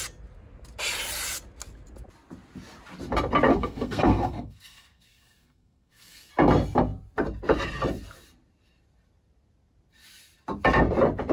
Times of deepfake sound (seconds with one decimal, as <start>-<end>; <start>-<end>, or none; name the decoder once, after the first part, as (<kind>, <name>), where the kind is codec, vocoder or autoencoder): 3.5-6.3 (codec, SNAC)